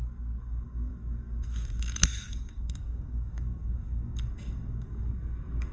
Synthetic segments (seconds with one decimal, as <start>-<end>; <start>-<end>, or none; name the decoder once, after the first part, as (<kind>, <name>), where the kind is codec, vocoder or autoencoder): 0.0-5.7 (codec, SNAC)